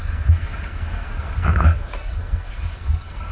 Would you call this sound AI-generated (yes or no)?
yes